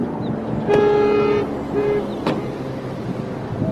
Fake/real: real